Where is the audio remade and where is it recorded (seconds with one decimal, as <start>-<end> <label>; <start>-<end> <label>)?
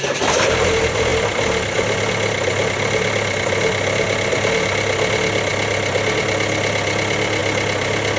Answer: 0.0-8.2 recorded